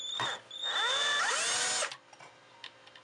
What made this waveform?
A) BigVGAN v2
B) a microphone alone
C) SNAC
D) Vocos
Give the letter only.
B